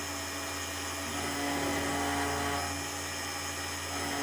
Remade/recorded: recorded